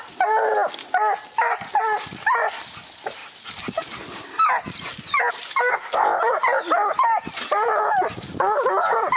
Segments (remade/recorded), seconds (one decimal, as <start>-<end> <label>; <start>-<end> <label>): 0.0-5.7 recorded; 5.7-6.2 remade; 6.2-9.2 recorded